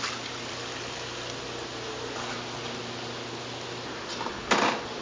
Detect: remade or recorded recorded